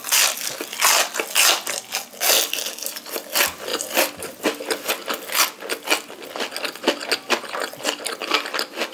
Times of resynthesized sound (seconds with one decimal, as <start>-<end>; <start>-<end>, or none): none

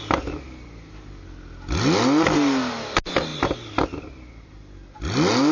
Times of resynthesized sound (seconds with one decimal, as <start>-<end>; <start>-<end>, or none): none

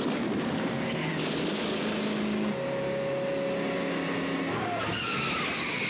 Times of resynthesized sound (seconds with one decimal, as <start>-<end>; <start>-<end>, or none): 0.0-1.1; 4.6-5.1

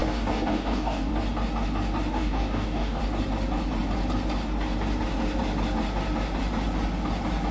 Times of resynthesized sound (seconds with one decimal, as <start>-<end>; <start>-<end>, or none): 0.0-1.1; 2.1-3.0

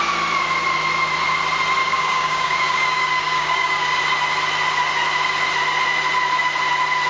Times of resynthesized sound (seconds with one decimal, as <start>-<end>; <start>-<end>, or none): 1.8-4.0

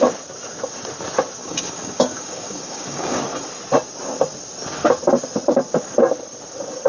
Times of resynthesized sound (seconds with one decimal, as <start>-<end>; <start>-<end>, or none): 1.4-3.2